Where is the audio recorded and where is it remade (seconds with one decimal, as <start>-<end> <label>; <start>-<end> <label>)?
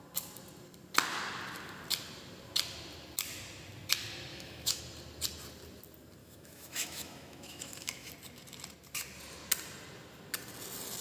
0.0-4.3 recorded; 4.3-4.8 remade; 4.8-6.2 recorded; 6.2-8.1 remade; 8.1-11.0 recorded